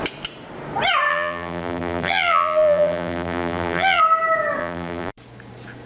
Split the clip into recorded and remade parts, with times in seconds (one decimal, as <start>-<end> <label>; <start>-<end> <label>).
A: 0.0-1.1 recorded; 1.1-4.0 remade; 4.0-4.6 recorded; 4.6-5.1 remade; 5.1-5.9 recorded